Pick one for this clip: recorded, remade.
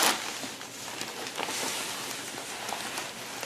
recorded